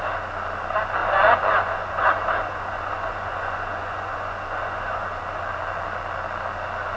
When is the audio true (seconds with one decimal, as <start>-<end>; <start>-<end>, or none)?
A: 0.0-1.0; 5.2-7.0

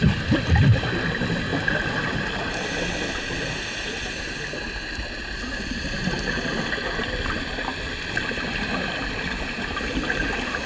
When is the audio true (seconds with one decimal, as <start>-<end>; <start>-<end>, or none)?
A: 1.5-5.5

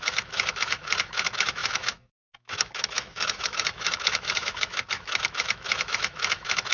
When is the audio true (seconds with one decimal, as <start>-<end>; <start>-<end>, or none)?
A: none

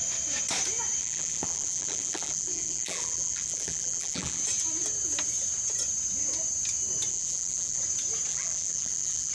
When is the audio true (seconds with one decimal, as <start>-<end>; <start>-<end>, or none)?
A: 0.0-1.0; 4.4-7.1; 7.8-8.3

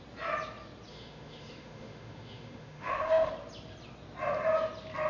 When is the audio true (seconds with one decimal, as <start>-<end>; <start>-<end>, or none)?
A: 0.0-0.9; 3.3-5.1

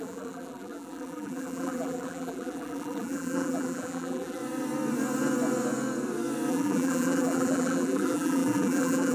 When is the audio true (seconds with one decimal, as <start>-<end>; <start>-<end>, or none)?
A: 4.4-6.5